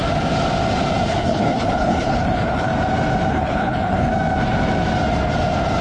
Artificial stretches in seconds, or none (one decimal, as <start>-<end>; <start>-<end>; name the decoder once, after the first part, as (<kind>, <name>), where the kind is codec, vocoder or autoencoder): 1.1-2.7 (codec, HILCodec); 3.3-4.1